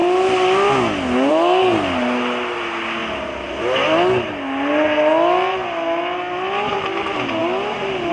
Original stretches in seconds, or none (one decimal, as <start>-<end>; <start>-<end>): 0.0-8.1